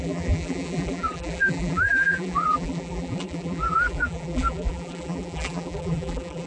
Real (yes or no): no